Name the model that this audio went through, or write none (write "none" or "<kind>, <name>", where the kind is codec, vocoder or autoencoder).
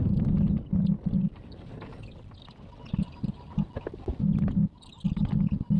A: none